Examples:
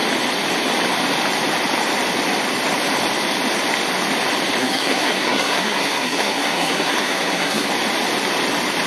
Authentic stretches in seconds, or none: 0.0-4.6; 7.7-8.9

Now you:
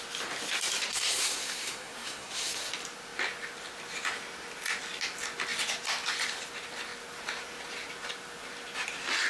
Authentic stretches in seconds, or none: 0.0-0.9; 2.7-9.3

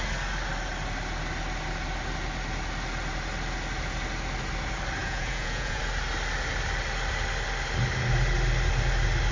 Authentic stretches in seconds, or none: 0.0-5.0; 5.8-9.3